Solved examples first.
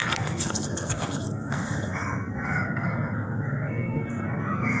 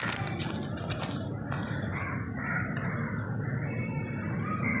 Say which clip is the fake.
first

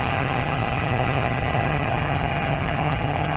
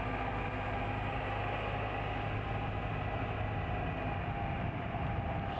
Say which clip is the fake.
first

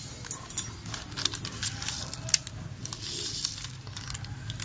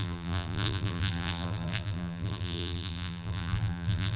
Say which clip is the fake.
second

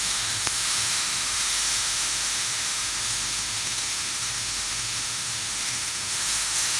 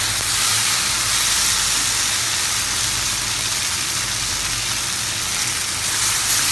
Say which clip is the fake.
first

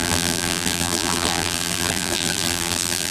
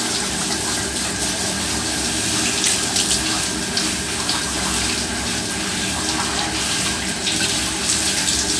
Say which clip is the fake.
first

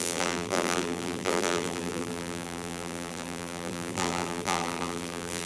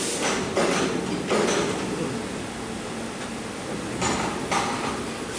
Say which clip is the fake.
first